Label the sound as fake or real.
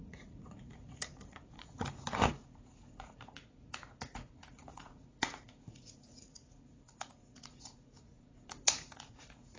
fake